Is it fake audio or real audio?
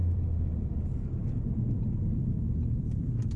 fake